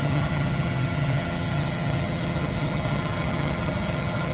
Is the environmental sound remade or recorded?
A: remade